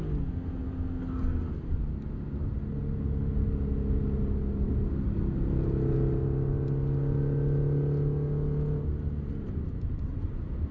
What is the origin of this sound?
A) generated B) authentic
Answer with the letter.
B